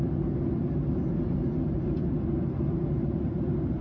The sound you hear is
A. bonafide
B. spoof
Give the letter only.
A